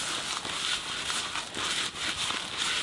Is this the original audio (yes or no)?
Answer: yes